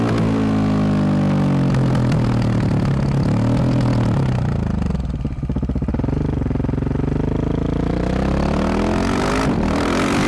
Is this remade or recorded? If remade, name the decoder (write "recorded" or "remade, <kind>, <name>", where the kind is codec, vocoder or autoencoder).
recorded